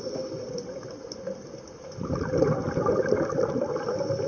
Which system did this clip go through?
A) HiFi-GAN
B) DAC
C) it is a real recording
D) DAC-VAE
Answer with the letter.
C